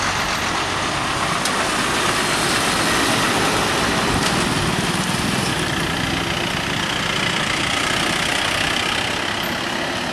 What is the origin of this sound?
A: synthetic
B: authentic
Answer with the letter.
B